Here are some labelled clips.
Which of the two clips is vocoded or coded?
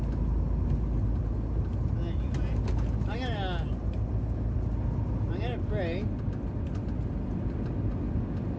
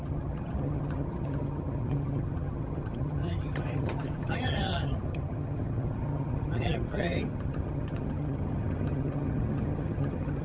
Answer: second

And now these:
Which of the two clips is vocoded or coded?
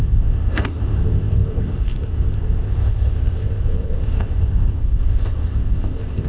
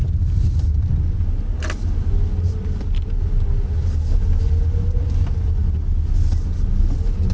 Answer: first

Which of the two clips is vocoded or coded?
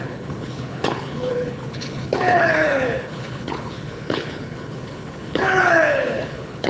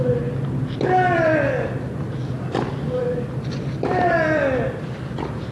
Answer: first